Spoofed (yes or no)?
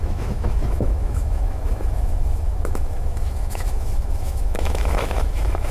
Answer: yes